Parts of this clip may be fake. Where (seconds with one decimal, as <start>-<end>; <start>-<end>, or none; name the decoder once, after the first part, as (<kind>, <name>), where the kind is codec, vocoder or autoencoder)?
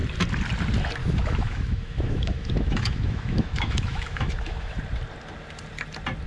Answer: 1.0-4.8 (autoencoder, DAC-VAE)